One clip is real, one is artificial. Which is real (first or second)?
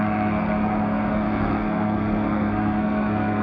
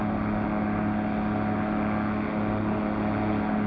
second